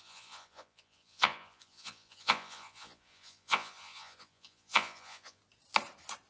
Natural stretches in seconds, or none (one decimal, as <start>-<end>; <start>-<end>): 5.4-6.3